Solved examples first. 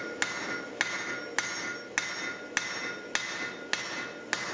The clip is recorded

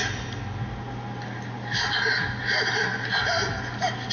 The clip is recorded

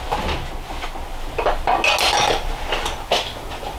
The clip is recorded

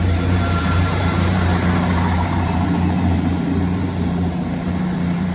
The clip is remade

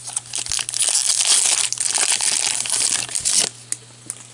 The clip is recorded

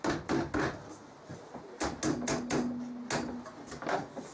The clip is recorded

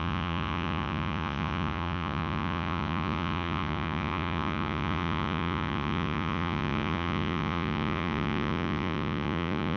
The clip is remade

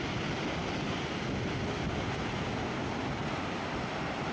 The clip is recorded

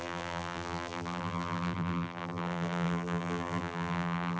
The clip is remade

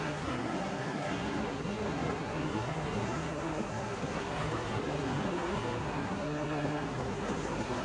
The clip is remade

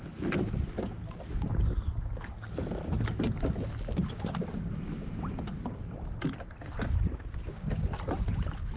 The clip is recorded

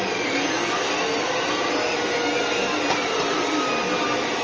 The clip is recorded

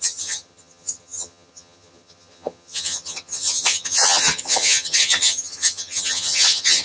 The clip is remade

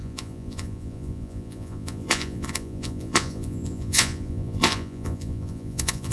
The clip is remade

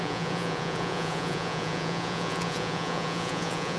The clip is remade